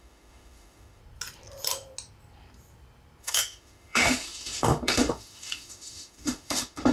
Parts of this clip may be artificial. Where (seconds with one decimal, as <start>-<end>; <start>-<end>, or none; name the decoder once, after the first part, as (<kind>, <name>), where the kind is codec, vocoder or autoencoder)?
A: 0.0-1.0 (autoencoder, DAC-VAE); 3.2-6.9

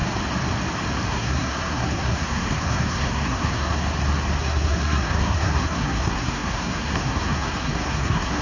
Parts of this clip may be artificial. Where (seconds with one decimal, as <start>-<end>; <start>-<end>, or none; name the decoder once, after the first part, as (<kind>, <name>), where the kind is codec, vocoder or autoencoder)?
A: 1.1-3.8 (codec, SNAC); 4.4-8.4

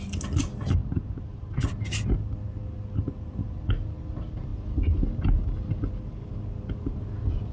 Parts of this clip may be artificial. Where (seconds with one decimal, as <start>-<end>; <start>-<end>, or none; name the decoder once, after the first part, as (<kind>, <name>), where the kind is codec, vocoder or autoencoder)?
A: none

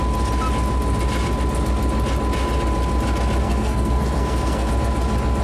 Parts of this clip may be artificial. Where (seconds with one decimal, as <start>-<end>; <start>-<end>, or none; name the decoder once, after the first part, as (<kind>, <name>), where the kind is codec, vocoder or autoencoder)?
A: 3.4-4.7 (codec, SNAC)

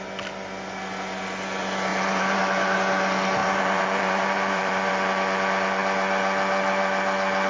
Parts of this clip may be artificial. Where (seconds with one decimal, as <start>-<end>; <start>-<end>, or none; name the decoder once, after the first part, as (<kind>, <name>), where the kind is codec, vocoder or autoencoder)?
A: 1.9-2.4 (vocoder, BigVGAN v2); 3.4-4.9